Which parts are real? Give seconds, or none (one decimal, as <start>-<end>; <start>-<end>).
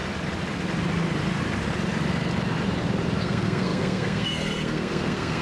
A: 0.0-3.2